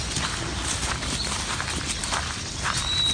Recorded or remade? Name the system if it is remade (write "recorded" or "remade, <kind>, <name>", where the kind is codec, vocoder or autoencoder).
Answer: recorded